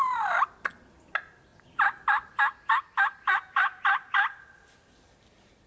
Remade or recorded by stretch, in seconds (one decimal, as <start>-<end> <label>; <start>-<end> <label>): 0.0-5.7 recorded